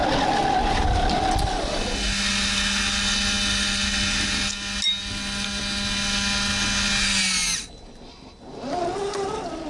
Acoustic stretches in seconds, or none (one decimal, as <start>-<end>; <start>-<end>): 0.0-9.7